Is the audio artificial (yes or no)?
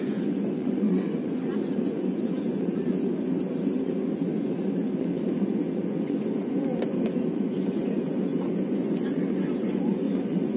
yes